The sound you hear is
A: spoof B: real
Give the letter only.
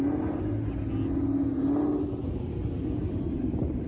B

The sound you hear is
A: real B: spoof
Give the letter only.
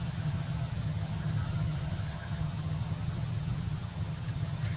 B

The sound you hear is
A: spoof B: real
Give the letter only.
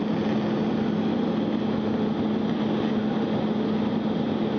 B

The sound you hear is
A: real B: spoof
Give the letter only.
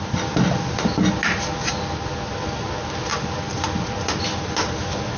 A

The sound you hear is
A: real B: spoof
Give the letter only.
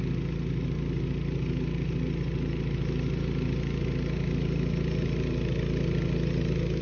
A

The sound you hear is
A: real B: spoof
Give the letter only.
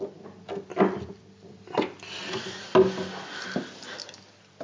A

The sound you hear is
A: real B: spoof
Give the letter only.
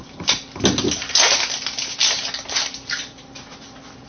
A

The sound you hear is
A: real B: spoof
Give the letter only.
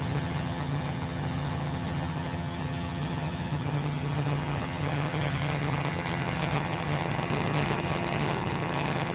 B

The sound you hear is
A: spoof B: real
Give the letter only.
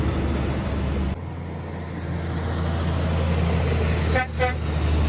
B